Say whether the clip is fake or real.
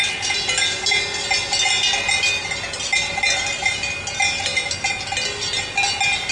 real